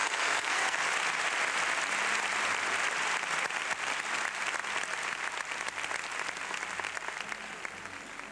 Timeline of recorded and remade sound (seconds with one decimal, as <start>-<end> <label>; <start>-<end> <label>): 0.0-0.9 remade; 0.9-8.3 recorded